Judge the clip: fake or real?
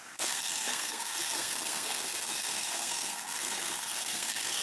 fake